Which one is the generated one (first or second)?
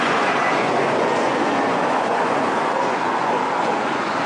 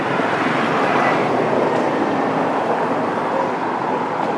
first